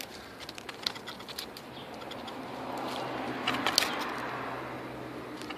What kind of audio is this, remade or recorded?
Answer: recorded